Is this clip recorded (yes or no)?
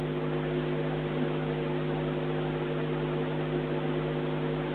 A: yes